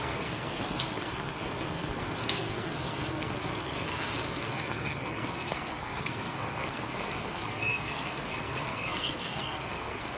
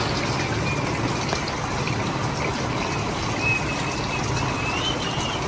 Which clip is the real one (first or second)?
second